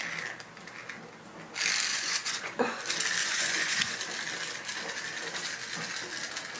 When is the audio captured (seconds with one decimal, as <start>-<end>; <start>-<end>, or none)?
0.0-1.9; 2.8-3.2; 4.0-6.6